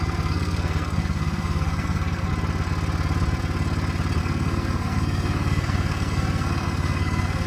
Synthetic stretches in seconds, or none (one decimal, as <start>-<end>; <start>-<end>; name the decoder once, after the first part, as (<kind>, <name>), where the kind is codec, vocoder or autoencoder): 0.0-2.3 (codec, SNAC); 4.2-7.5